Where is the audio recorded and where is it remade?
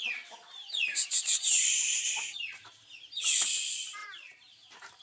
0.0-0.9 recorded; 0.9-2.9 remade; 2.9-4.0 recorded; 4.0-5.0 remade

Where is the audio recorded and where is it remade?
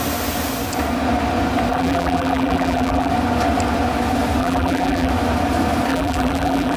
0.0-1.7 recorded; 1.7-3.1 remade; 3.1-4.4 recorded; 4.4-5.1 remade; 5.1-5.9 recorded; 5.9-6.8 remade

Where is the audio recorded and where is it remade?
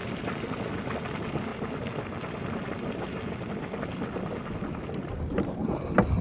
0.0-6.2 recorded